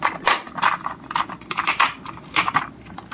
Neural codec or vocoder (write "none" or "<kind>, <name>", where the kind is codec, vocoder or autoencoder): none